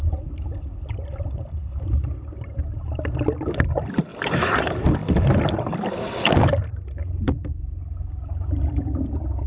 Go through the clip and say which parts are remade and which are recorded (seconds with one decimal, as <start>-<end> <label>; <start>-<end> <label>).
0.0-5.0 recorded; 5.0-5.9 remade; 5.9-9.5 recorded